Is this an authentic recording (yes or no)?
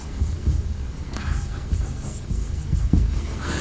no